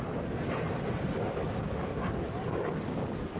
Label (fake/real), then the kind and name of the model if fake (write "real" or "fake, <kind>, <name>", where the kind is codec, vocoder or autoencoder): real